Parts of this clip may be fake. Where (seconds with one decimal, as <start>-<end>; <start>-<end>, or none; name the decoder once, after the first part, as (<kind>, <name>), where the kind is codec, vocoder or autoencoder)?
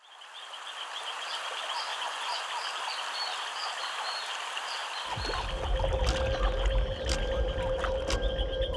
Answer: 1.9-2.4 (vocoder, Vocos)